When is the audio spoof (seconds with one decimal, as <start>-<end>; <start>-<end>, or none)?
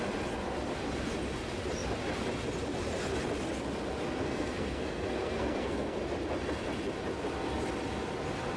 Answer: 4.2-6.0